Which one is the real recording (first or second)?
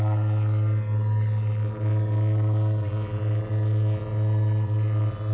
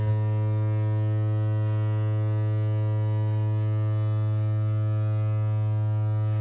second